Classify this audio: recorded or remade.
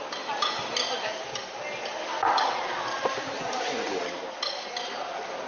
recorded